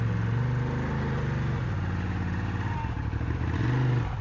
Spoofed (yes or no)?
no